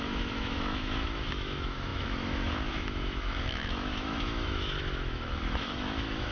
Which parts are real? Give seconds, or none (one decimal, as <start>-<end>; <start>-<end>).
none